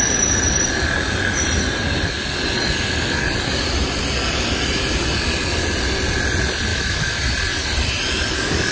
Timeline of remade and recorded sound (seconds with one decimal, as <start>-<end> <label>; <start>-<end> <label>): 0.0-6.7 recorded; 6.7-7.2 remade; 7.2-8.7 recorded